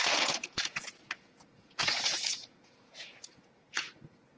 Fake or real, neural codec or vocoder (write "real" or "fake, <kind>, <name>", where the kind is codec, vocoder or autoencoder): fake, vocoder, Vocos